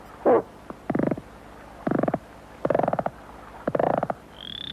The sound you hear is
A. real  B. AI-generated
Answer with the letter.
A